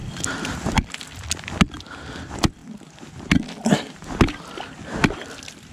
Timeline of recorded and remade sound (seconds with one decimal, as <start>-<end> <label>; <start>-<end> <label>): 0.0-5.7 recorded